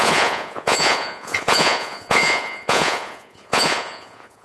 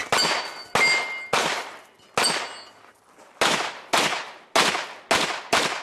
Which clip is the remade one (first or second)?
first